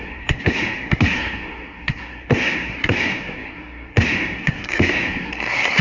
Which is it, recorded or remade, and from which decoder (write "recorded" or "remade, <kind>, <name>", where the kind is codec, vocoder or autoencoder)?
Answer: remade, codec, SNAC